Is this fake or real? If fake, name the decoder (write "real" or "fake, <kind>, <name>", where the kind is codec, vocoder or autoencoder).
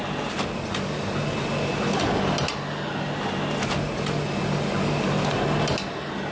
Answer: real